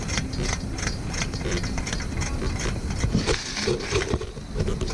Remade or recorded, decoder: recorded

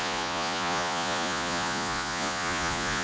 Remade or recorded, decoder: remade, vocoder, Vocos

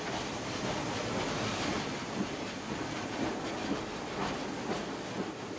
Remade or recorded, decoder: recorded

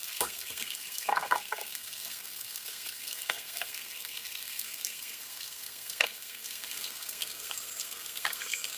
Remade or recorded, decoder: remade, codec, SNAC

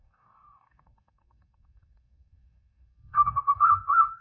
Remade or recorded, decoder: remade, codec, DAC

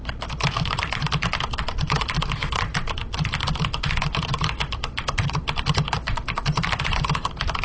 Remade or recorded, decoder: remade, vocoder, BigVGAN v2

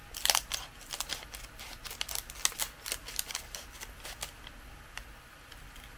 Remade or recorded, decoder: recorded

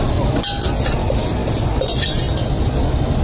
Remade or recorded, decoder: recorded